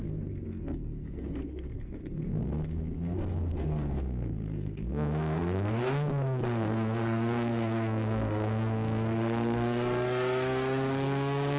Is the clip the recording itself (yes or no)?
no